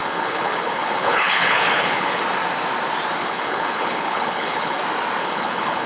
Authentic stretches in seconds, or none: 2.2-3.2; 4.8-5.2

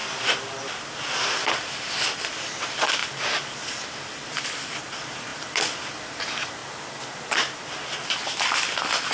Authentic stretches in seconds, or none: 0.0-2.5; 3.0-4.1; 6.6-8.5

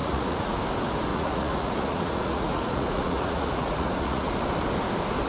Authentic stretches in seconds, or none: 0.6-1.1; 4.3-5.3

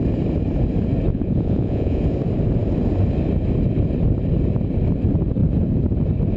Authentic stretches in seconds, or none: 0.0-1.1; 2.0-6.4

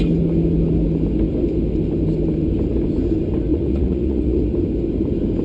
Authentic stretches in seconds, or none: 0.0-3.5; 4.4-5.4